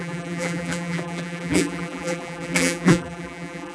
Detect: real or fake fake